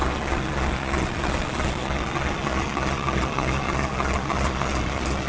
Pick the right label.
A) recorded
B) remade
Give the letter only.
B